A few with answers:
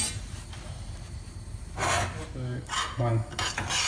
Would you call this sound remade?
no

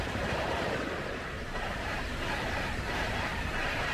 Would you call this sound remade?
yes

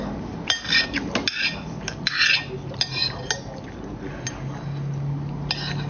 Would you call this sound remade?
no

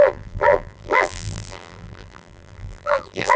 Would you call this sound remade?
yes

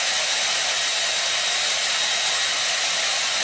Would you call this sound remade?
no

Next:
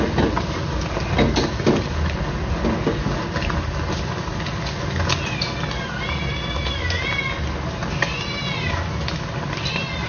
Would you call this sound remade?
no